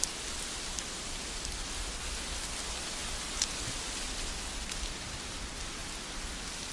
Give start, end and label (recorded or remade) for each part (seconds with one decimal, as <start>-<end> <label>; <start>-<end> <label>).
0.0-6.7 recorded